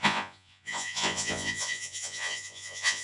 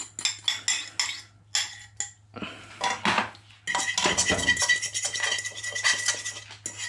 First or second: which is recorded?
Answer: second